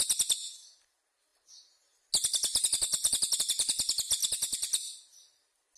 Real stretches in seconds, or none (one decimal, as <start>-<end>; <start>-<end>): 0.0-5.8